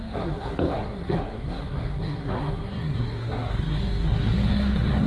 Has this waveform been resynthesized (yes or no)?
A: yes